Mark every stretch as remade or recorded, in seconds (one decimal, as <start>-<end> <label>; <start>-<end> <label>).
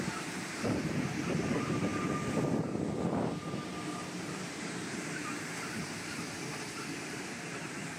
0.0-1.9 remade; 1.9-3.9 recorded; 3.9-8.0 remade